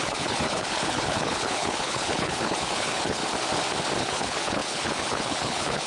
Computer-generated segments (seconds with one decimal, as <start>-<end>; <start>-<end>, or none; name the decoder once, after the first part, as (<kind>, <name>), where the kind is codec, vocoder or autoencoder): 0.0-3.2 (codec, HILCodec); 4.0-5.9